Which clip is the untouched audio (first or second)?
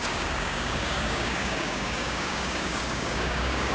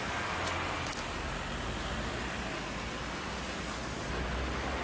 second